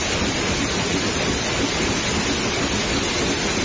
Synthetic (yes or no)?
no